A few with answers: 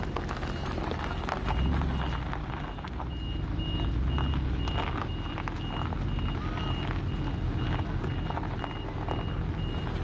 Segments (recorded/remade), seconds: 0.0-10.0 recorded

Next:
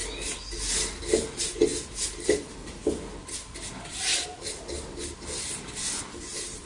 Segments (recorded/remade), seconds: 0.0-6.7 recorded

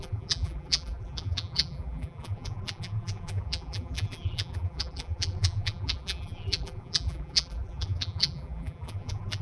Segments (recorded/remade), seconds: 0.0-9.4 remade